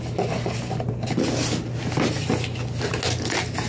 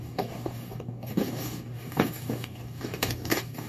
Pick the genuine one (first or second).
first